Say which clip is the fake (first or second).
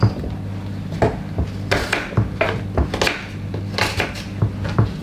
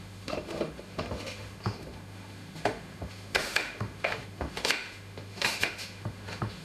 second